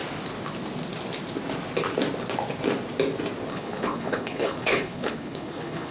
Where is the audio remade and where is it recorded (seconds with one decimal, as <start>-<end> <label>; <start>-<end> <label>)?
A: 0.0-3.5 recorded; 3.5-5.9 remade